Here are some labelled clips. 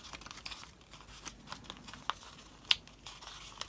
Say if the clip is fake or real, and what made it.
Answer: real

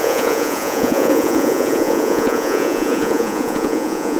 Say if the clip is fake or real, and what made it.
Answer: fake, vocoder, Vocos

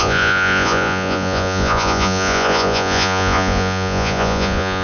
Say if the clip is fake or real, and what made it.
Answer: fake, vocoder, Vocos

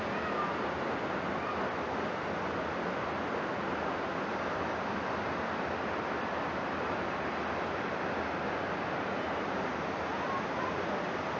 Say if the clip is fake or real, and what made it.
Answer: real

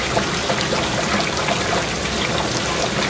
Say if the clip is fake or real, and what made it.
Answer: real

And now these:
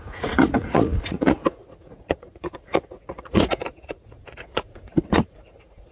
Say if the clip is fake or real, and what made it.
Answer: fake, vocoder, Vocos